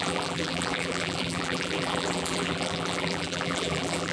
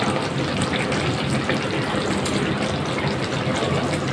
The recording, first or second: second